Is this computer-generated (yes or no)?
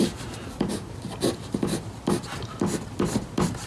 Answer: no